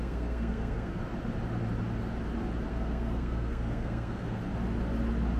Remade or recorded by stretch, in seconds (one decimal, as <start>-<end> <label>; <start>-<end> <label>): 0.0-1.0 remade; 1.0-2.7 recorded; 2.7-4.4 remade; 4.4-5.4 recorded